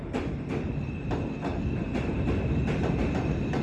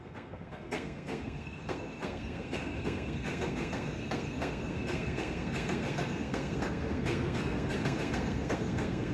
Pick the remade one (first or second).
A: second